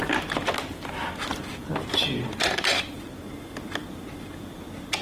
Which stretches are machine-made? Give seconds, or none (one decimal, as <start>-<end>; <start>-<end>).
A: 1.3-4.1